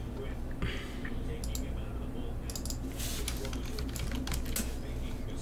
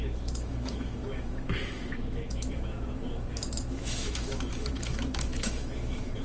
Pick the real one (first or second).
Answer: first